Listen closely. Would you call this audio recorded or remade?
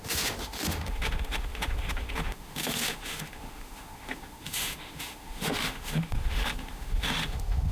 remade